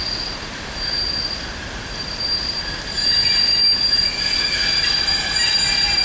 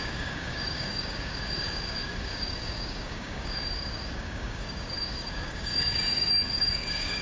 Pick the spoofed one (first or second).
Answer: second